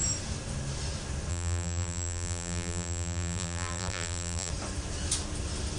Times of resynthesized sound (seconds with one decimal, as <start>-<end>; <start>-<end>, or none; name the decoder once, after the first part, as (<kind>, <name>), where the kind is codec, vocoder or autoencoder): 1.3-4.5 (vocoder, BigVGAN v2)